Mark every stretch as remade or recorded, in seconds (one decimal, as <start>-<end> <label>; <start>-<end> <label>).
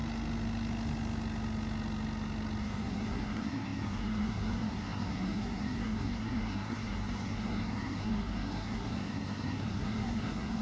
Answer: 0.0-2.6 recorded; 2.6-10.6 remade